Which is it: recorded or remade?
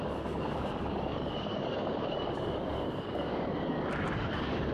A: remade